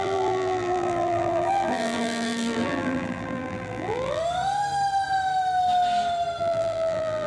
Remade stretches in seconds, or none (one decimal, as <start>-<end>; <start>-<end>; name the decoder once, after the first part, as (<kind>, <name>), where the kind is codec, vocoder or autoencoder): 0.0-4.2 (vocoder, BigVGAN v2); 6.4-7.3